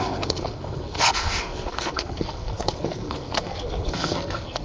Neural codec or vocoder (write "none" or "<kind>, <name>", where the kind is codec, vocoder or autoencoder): codec, SNAC